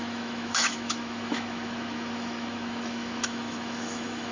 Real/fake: fake